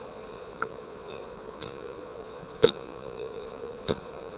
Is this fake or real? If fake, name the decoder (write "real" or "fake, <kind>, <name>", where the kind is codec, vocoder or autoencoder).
fake, vocoder, Vocos